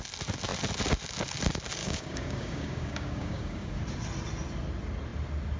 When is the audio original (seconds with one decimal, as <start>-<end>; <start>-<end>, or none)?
0.0-1.8; 3.8-5.6